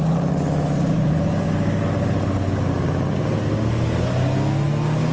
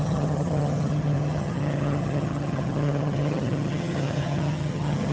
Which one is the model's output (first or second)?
second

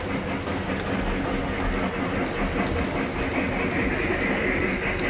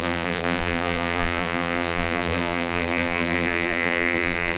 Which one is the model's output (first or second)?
second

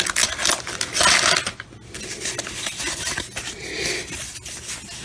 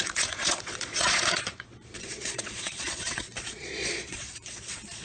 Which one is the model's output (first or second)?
second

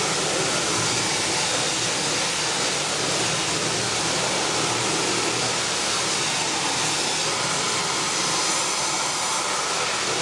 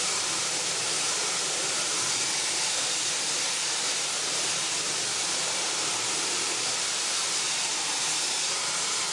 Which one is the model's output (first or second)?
second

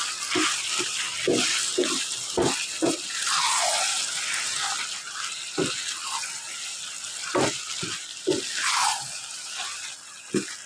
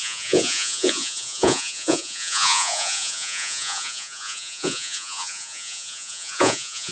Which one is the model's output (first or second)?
second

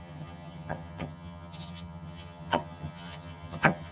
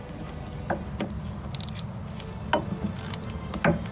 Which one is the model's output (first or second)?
first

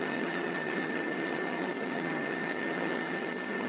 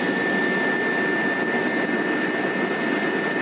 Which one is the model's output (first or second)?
first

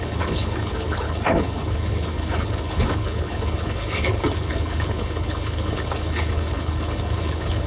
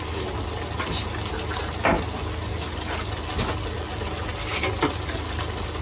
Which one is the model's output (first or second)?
first